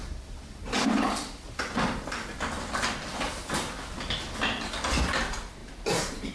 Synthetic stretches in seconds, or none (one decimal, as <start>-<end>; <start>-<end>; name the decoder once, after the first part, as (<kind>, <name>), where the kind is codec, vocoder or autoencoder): 5.6-6.3 (vocoder, BigVGAN v2)